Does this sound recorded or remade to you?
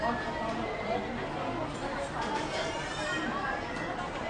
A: recorded